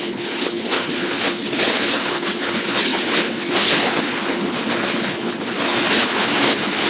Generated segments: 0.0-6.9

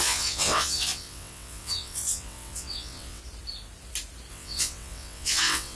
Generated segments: 0.0-3.2; 4.3-5.7

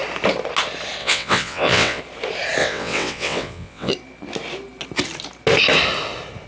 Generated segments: 1.0-2.0; 2.6-3.9

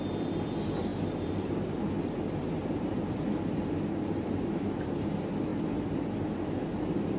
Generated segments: none

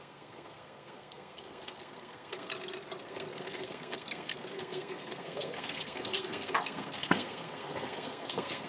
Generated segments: 0.0-2.5; 3.0-8.7

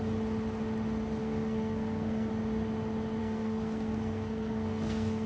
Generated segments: 1.2-2.3; 3.2-5.3

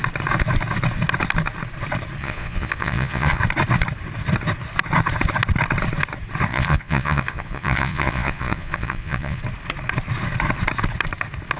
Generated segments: 2.2-3.4; 6.5-9.4

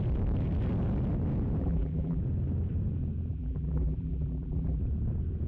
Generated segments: 1.6-2.2; 3.3-4.8